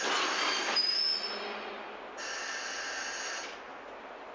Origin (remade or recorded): recorded